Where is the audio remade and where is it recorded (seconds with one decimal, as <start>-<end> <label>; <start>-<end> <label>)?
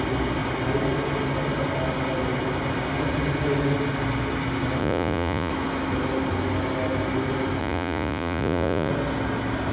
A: 0.0-4.8 recorded; 4.8-5.5 remade; 5.5-7.6 recorded; 7.6-8.9 remade; 8.9-9.7 recorded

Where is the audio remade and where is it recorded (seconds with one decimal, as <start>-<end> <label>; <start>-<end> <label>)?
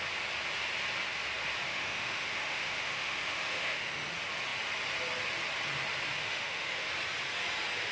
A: 0.0-1.7 recorded; 1.7-4.1 remade; 4.1-6.2 recorded; 6.2-6.9 remade; 6.9-7.9 recorded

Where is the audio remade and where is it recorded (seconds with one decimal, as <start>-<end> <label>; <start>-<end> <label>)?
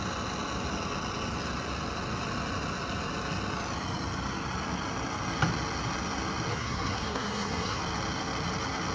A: 0.0-6.5 recorded; 6.5-7.8 remade; 7.8-8.9 recorded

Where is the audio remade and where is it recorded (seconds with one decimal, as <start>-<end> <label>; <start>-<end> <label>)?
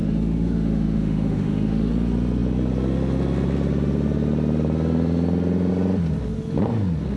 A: 0.0-1.9 remade; 1.9-7.2 recorded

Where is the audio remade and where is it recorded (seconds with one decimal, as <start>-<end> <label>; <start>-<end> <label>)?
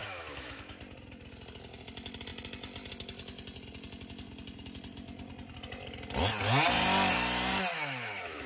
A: 0.0-0.8 remade; 0.8-7.7 recorded; 7.7-8.5 remade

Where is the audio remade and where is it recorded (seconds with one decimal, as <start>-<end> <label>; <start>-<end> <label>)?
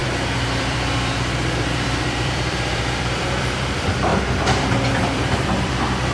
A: 0.0-0.6 recorded; 0.6-6.1 remade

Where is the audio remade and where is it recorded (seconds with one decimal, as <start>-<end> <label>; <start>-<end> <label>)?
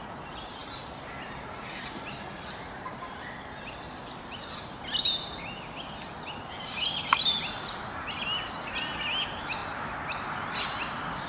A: 0.0-11.3 recorded